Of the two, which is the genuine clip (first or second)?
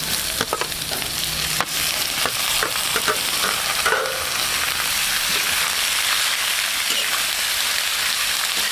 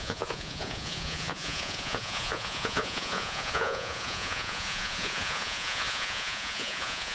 first